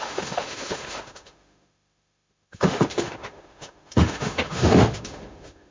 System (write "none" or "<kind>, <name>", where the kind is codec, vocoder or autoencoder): autoencoder, DAC-VAE